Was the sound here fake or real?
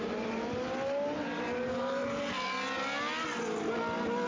real